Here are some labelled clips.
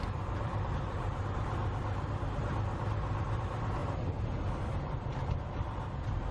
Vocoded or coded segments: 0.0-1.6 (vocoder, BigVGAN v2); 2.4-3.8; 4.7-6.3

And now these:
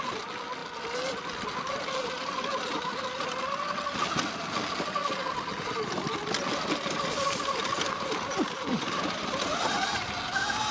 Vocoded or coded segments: 8.7-9.5 (vocoder, BigVGAN v2)

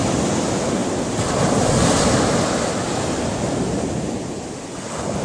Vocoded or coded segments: none

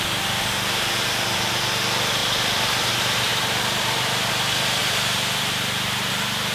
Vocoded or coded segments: 3.3-4.3 (vocoder, BigVGAN v2); 4.8-6.1

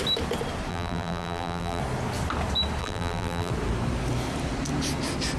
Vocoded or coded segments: 0.7-1.8 (vocoder, BigVGAN v2); 2.8-3.5

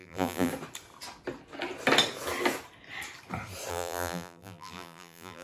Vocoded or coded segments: 0.0-0.5 (vocoder, BigVGAN v2); 3.7-5.4

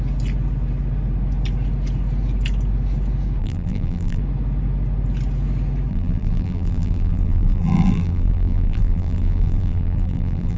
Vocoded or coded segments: 3.4-4.2 (vocoder, BigVGAN v2); 5.9-10.6

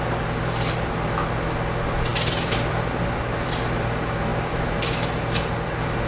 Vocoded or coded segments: 2.1-3.2 (vocoder, BigVGAN v2)